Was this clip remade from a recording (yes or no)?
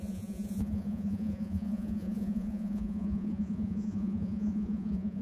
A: yes